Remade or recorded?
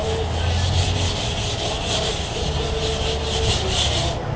recorded